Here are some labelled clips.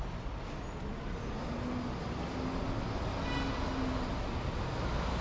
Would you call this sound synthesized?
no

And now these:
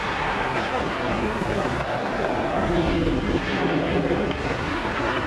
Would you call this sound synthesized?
yes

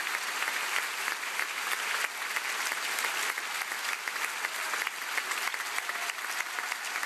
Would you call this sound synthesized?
no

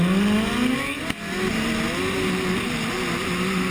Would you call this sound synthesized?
no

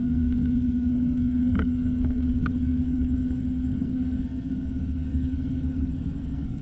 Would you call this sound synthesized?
yes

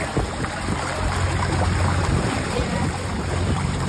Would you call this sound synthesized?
no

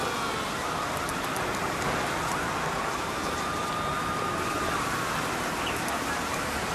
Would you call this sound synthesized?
no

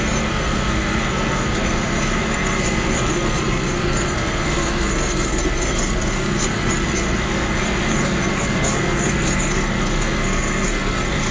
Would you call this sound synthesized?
yes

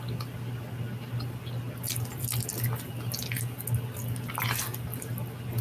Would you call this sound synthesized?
no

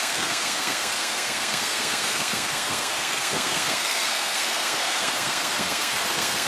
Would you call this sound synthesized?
yes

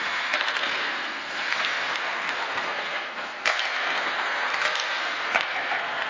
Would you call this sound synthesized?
yes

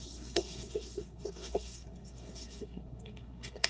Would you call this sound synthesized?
yes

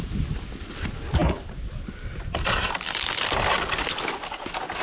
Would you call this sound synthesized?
no